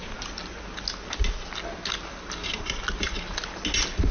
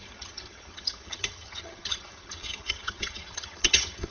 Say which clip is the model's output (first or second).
second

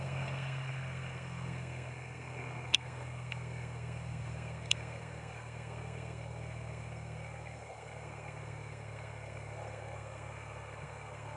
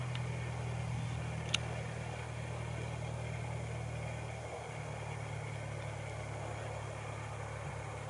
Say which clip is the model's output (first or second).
first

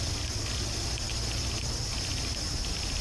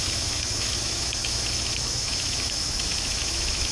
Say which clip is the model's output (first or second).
second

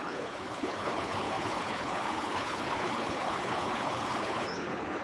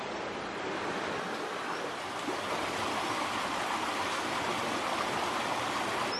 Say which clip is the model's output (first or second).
first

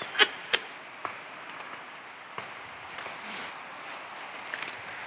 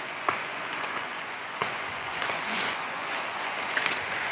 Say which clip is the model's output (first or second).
second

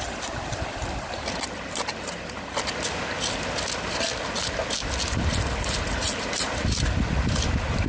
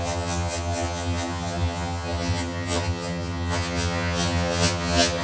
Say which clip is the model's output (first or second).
second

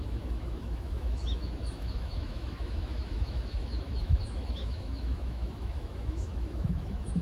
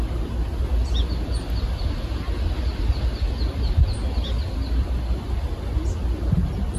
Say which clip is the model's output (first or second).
first